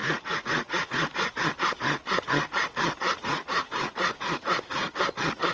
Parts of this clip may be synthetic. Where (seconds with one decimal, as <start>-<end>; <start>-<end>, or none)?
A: 0.0-1.4; 3.1-5.0